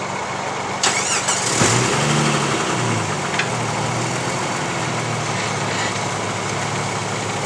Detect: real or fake real